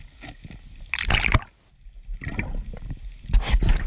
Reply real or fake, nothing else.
real